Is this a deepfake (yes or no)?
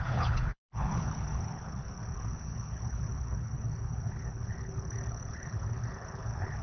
yes